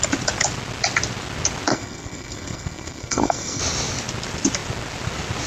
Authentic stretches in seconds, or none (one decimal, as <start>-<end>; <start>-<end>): 0.0-1.7; 3.6-5.5

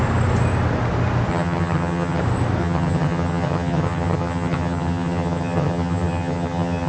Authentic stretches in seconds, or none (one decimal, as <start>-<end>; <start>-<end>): 0.0-1.3; 2.2-2.6